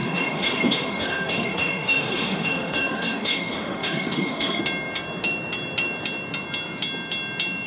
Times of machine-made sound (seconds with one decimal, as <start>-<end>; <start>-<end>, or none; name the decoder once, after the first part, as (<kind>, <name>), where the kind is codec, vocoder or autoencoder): 0.0-4.6 (autoencoder, DAC-VAE)